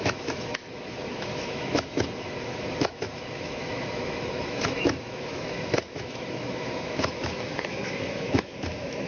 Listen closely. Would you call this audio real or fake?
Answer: fake